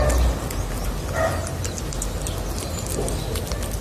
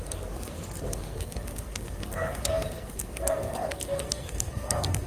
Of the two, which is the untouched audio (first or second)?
first